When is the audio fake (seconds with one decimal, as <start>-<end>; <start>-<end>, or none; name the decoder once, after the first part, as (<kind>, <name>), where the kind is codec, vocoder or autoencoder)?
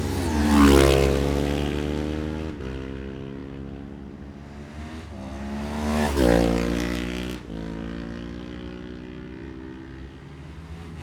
none